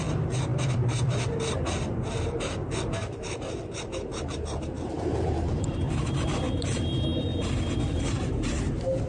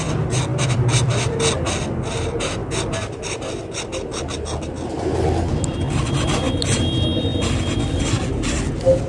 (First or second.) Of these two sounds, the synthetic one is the first